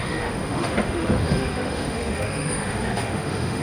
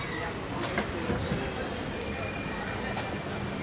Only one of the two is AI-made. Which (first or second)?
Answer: first